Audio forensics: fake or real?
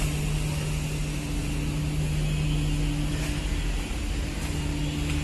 real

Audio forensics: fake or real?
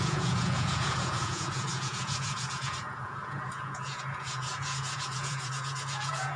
fake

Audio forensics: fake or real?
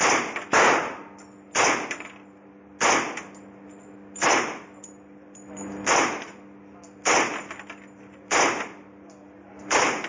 real